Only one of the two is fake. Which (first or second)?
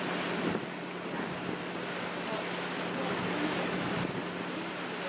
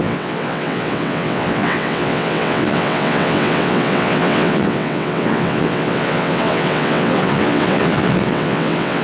second